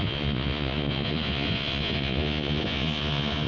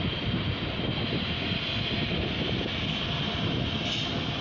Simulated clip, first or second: first